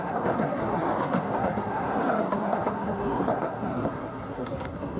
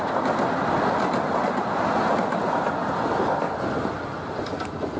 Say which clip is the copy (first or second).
first